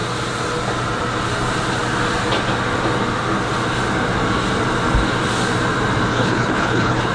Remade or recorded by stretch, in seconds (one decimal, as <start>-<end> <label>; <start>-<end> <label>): 0.0-6.1 recorded; 6.1-7.1 remade